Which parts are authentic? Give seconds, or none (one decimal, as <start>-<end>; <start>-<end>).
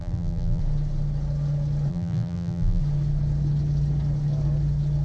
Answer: 0.6-1.9; 2.8-5.0